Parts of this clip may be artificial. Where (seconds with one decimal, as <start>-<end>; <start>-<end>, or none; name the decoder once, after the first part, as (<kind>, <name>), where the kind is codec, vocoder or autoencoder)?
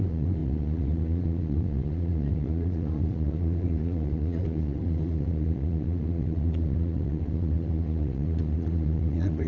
0.0-9.5 (vocoder, Vocos)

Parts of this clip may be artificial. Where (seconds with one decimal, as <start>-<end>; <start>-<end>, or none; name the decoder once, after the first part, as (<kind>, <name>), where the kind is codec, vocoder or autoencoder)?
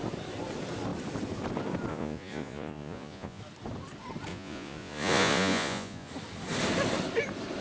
1.9-3.4 (vocoder, Vocos); 4.3-6.1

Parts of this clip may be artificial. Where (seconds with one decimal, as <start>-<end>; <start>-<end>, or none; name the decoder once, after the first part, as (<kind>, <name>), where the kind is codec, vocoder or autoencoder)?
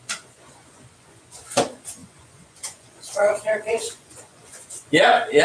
0.0-5.4 (vocoder, Vocos)